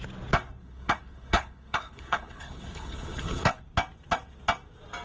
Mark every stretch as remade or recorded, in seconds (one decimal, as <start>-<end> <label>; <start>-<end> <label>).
0.0-0.6 recorded; 0.6-3.6 remade; 3.6-5.0 recorded